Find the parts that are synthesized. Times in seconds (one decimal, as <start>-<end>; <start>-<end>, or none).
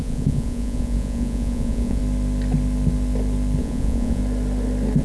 0.0-2.0; 3.6-4.2